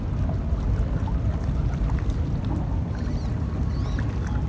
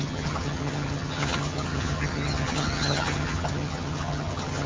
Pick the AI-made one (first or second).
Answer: second